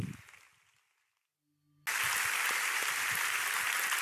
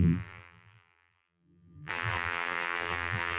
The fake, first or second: second